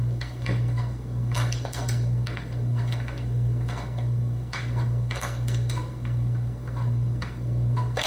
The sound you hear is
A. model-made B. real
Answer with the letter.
A